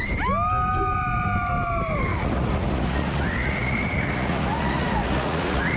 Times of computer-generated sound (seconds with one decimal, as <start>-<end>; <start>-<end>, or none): 2.1-5.8